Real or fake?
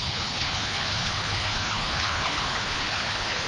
fake